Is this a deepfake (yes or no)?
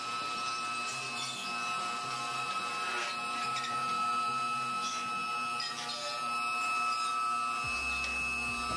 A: no